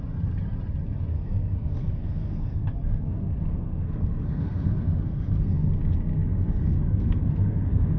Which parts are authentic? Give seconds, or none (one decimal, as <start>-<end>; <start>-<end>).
0.0-1.1; 5.7-6.6